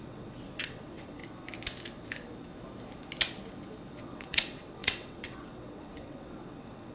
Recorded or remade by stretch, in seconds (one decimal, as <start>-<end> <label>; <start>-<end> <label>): 0.0-1.2 remade; 1.2-4.0 recorded; 4.0-6.9 remade